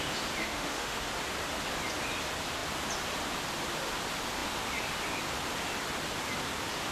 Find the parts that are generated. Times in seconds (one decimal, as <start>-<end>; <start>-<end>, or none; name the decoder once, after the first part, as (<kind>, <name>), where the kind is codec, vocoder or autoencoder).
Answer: 0.4-1.1 (autoencoder, DAC-VAE)